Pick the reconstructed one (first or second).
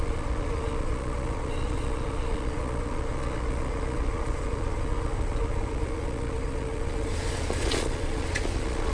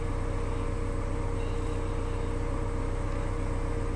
first